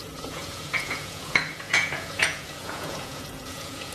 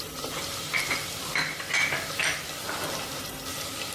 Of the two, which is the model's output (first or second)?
first